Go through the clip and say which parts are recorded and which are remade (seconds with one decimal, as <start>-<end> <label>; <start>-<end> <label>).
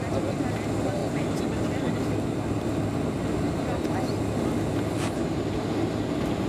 0.0-6.5 recorded